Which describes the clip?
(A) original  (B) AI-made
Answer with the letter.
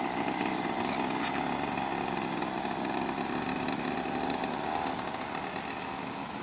A